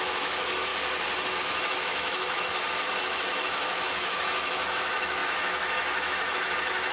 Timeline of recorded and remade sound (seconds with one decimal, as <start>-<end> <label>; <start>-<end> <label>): 0.0-0.7 remade; 0.7-1.4 recorded; 1.4-2.5 remade; 2.5-3.0 recorded; 3.0-6.9 remade